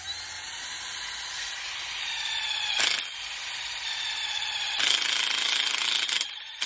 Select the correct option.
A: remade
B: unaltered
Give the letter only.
B